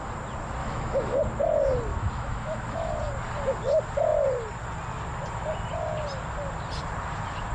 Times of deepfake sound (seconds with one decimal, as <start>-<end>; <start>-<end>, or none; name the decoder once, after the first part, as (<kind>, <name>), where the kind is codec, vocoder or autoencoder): 0.6-1.2 (autoencoder, DAC-VAE); 1.9-3.0